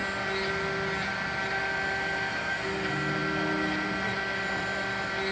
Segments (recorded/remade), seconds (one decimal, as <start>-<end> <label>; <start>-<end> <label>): 0.0-5.3 recorded